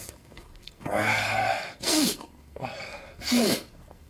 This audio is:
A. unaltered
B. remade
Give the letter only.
B